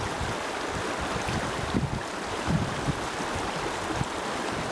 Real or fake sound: real